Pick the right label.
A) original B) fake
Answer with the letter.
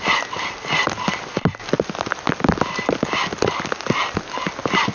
A